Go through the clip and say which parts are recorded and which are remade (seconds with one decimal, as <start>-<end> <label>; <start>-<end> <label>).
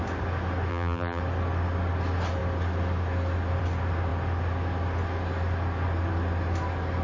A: 0.0-0.7 recorded; 0.7-1.2 remade; 1.2-7.0 recorded